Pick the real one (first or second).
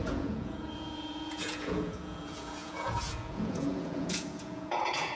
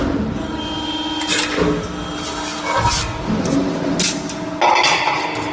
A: second